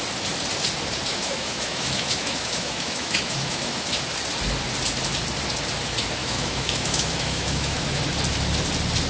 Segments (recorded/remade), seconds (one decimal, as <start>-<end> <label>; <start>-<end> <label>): 0.0-1.1 recorded; 1.1-3.9 remade; 3.9-6.2 recorded; 6.2-8.0 remade; 8.0-9.1 recorded

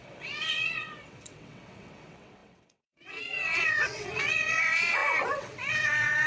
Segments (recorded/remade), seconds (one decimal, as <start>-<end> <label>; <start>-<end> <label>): 0.0-6.3 remade

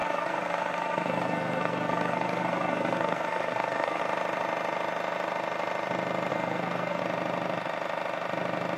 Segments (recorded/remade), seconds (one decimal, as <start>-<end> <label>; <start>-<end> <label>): 0.0-4.0 remade; 4.0-6.3 recorded; 6.3-7.0 remade; 7.0-8.8 recorded

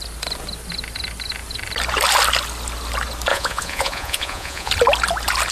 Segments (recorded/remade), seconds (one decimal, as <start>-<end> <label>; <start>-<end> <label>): 0.0-3.3 recorded; 3.3-4.7 remade; 4.7-5.5 recorded